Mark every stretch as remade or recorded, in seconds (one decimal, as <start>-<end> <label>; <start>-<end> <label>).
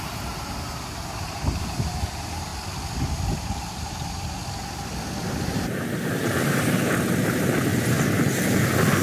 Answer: 0.0-2.5 remade; 2.5-3.6 recorded; 3.6-4.4 remade; 4.4-5.3 recorded; 5.3-7.7 remade; 7.7-9.0 recorded